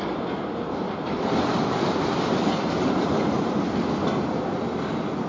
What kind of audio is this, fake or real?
real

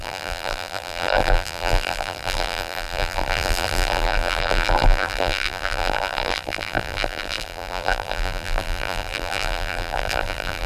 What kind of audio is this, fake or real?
fake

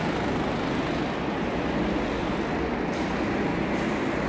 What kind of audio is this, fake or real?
real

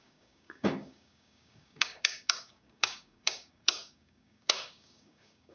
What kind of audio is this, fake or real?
fake